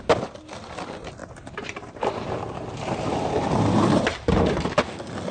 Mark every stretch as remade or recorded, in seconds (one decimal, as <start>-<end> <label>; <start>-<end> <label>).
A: 0.0-1.2 recorded; 1.2-4.4 remade; 4.4-5.3 recorded